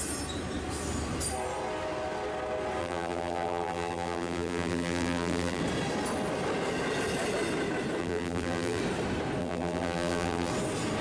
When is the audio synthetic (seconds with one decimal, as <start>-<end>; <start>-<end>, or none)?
2.8-5.6; 8.0-8.8; 9.4-10.5

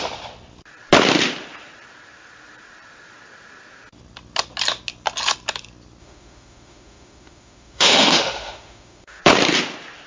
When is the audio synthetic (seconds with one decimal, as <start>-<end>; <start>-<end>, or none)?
6.0-9.2

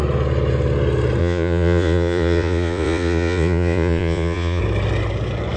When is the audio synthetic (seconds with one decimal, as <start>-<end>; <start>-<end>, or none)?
1.2-4.6

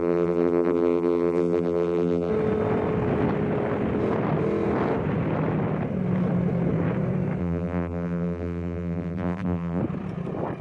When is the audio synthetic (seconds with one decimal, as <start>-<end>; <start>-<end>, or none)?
0.0-2.3; 7.4-9.8

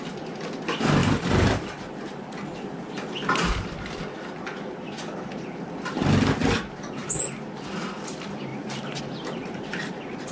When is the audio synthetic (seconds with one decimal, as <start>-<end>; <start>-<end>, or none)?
1.0-3.1; 9.4-9.9

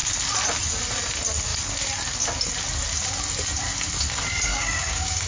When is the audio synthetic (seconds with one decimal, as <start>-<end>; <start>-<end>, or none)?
4.5-5.3